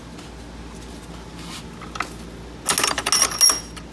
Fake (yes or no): no